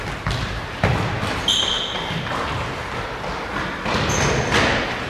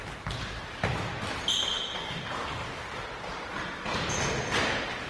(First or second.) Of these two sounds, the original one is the first